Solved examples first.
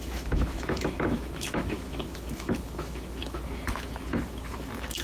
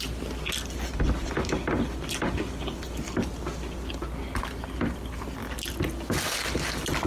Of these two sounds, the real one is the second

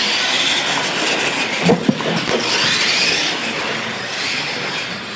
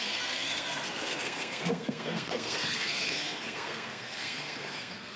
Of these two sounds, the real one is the first